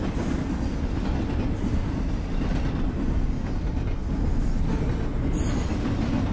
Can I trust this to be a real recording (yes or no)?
yes